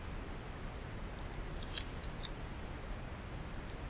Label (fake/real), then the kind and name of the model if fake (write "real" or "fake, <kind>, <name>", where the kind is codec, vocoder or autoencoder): real